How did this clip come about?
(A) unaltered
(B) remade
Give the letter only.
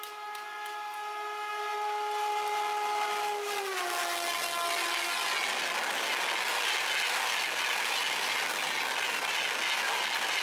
A